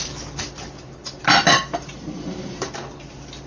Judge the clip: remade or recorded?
remade